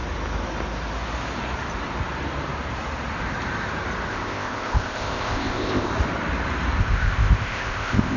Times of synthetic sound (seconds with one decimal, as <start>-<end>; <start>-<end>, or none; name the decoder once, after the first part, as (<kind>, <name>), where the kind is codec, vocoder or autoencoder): 4.1-5.9 (codec, ZipCodec); 6.8-8.2